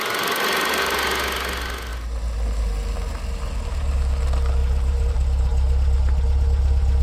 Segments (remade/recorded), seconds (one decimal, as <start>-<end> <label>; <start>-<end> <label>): 0.0-4.6 recorded; 4.6-5.1 remade; 5.1-7.0 recorded